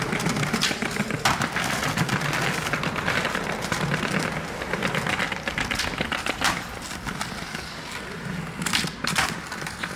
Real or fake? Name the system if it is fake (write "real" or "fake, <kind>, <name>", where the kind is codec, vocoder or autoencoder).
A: real